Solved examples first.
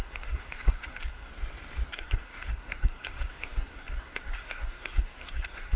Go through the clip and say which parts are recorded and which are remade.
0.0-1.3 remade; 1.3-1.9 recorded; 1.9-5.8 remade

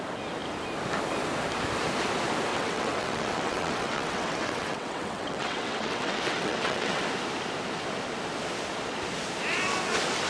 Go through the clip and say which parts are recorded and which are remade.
0.0-2.5 recorded; 2.5-7.0 remade; 7.0-10.3 recorded

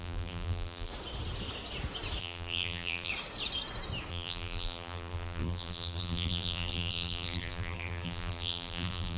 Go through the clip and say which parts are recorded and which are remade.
0.0-0.9 remade; 0.9-2.2 recorded; 2.2-3.1 remade; 3.1-4.1 recorded; 4.1-9.2 remade

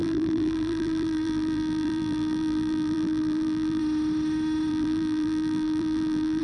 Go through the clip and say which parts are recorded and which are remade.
0.0-3.8 remade; 3.8-4.7 recorded; 4.7-6.4 remade